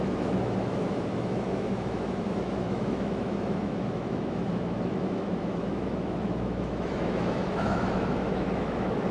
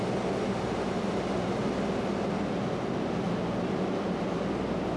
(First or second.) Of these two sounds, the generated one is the first